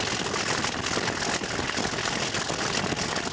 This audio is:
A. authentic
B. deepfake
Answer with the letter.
A